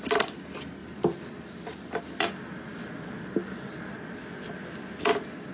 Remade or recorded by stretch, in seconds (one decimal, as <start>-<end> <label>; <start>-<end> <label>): 0.0-2.8 remade; 2.8-5.1 recorded; 5.1-5.5 remade

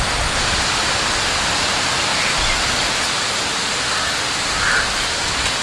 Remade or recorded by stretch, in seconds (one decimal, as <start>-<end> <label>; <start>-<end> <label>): 0.0-2.1 remade; 2.1-5.6 recorded

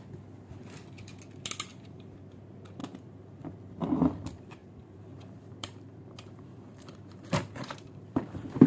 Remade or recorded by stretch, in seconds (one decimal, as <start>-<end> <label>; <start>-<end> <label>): 0.0-1.7 recorded; 1.7-2.4 remade; 2.4-4.6 recorded; 4.6-8.2 remade; 8.2-8.7 recorded

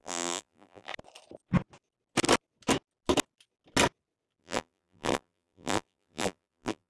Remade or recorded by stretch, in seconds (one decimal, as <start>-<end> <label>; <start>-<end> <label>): 0.0-0.9 remade; 0.9-4.4 recorded; 4.4-6.9 remade

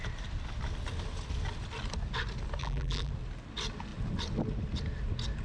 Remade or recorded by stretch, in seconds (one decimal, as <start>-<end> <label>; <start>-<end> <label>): 0.0-2.6 recorded; 2.6-3.1 remade; 3.1-5.4 recorded

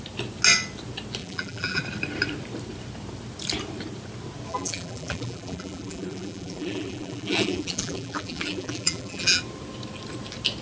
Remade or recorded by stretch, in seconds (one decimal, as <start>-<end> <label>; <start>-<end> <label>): 0.0-1.2 recorded; 1.2-1.8 remade; 1.8-4.5 recorded; 4.5-9.4 remade; 9.4-10.6 recorded

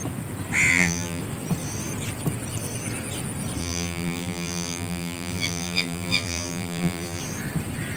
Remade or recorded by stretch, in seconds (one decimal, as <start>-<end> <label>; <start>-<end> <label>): 0.0-0.7 recorded; 0.7-1.2 remade; 1.2-3.6 recorded; 3.6-7.2 remade; 7.2-8.0 recorded

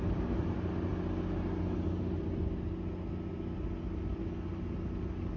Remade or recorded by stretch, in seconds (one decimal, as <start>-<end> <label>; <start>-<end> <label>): 0.0-5.4 recorded